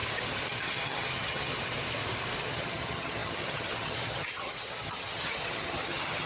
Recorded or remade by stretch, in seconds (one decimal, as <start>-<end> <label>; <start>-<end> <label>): 0.0-0.6 recorded; 0.6-1.5 remade; 1.5-2.4 recorded; 2.4-6.3 remade